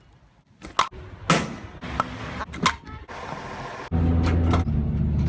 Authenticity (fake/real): real